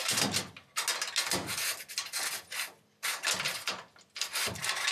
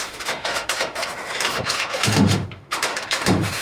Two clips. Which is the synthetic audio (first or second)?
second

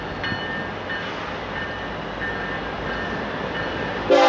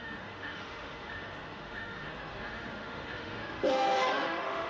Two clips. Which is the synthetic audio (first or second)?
second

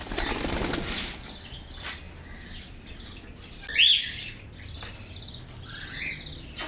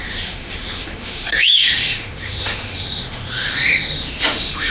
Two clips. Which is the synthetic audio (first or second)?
second